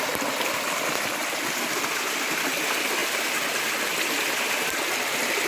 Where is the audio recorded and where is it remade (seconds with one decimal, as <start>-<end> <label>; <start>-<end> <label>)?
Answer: 0.0-5.5 recorded